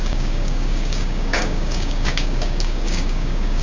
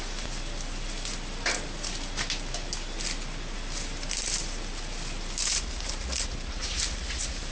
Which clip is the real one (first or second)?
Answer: second